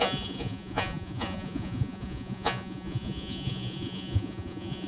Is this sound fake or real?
fake